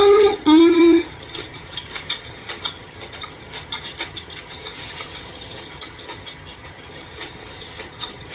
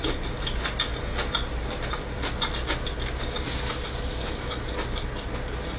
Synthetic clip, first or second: first